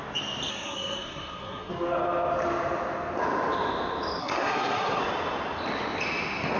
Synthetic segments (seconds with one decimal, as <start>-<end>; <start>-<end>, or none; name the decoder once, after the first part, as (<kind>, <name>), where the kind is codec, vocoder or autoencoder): 0.5-1.7 (codec, SNAC); 4.2-5.0